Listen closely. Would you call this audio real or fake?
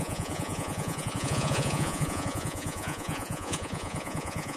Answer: fake